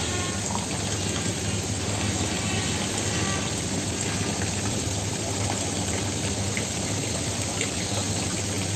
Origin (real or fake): real